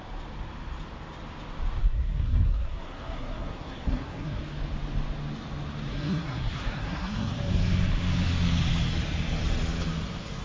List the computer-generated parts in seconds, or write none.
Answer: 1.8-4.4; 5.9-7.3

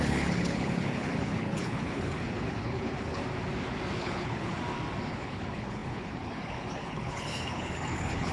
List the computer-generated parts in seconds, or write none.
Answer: 0.0-3.2; 4.0-4.5; 5.1-8.3

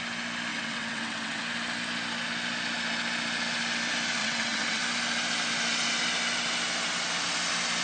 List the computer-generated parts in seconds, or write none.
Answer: 0.5-1.4; 4.2-4.8

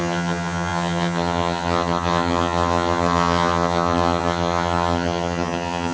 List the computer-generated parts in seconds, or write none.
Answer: 0.0-5.9